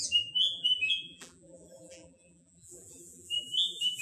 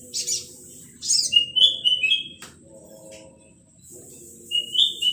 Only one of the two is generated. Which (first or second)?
first